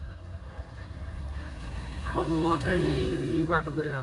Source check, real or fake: fake